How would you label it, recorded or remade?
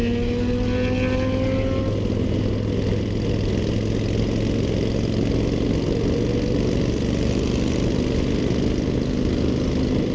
recorded